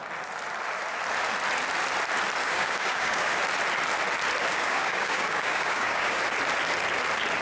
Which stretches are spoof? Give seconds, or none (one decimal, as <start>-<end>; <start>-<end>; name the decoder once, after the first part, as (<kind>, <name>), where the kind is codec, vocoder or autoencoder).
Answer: 2.4-3.3 (codec, DAC); 4.5-6.2

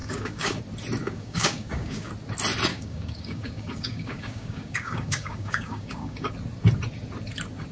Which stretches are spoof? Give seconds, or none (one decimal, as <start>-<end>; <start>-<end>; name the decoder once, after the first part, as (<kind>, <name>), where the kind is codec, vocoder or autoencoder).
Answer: 0.0-0.6 (codec, DAC); 1.0-2.1; 2.7-6.3

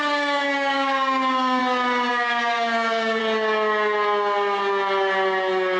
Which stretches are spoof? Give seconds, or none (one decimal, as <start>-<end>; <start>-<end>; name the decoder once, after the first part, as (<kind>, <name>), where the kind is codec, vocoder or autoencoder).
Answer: 0.0-1.6 (codec, DAC); 2.1-3.2

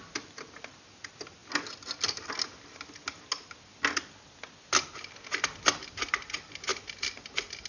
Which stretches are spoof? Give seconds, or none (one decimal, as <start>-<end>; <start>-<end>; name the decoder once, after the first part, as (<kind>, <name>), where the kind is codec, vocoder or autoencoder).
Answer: none

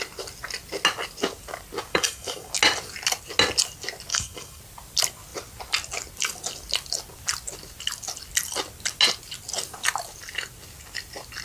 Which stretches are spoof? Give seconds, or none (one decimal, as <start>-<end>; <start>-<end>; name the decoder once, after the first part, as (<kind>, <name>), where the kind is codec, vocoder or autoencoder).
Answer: 1.9-2.5 (codec, DAC); 4.1-4.6

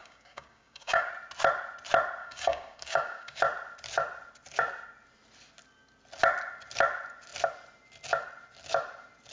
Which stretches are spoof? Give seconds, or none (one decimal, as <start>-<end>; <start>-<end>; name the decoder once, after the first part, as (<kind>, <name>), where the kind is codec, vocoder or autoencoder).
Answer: 0.0-1.1 (codec, DAC); 2.2-3.4